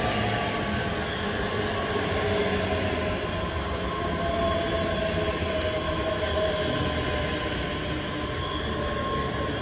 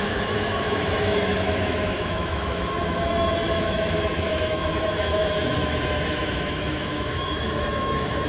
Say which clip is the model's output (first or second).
second